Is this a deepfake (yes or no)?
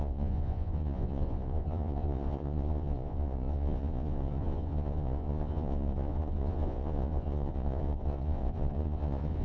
yes